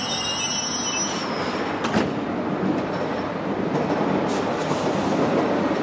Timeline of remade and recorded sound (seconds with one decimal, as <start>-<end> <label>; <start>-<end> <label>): 0.0-5.8 recorded